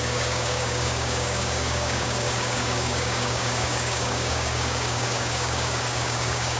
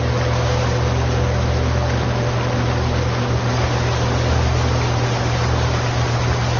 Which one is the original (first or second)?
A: second